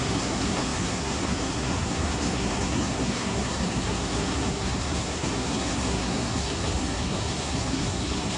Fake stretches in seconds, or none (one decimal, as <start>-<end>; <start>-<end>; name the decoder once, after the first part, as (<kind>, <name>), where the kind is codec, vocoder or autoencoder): 0.0-8.4 (codec, SNAC)